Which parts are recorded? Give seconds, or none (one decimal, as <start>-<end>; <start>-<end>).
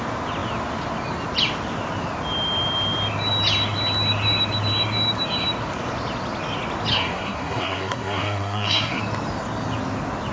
0.0-6.9; 9.0-10.3